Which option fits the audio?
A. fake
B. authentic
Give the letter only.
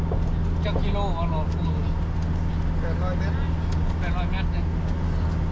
B